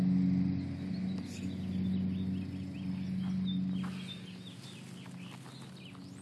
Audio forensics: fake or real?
real